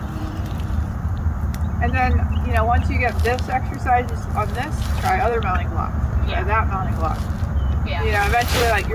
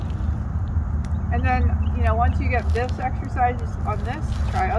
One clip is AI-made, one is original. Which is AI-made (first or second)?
first